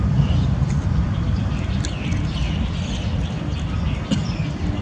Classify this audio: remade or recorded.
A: recorded